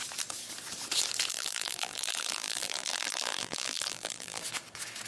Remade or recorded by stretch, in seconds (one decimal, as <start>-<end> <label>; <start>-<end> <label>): 0.0-1.3 recorded; 1.3-4.4 remade; 4.4-5.1 recorded